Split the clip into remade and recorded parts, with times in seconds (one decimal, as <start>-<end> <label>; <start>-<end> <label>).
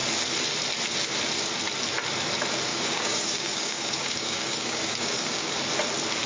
0.0-2.7 recorded; 2.7-5.5 remade; 5.5-6.3 recorded